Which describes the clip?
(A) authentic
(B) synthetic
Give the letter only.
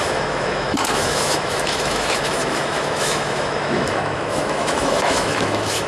B